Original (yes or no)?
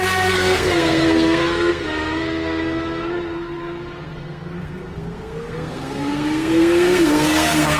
no